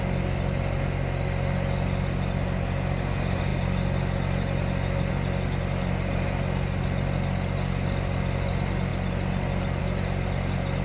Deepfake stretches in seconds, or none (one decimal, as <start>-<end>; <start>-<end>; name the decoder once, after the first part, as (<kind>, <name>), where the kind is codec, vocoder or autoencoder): none